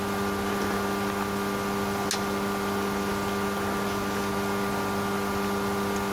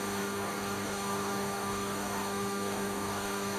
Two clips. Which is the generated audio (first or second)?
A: second